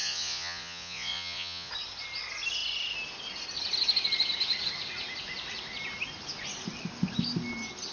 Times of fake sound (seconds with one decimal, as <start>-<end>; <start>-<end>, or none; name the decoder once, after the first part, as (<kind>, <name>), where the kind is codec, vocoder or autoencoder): 0.0-1.7 (vocoder, Vocos)